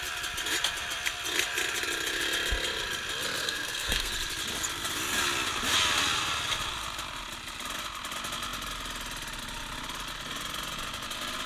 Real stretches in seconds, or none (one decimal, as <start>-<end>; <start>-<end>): 0.0-3.4; 4.1-11.5